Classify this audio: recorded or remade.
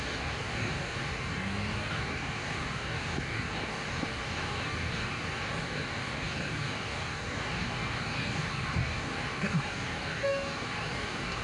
remade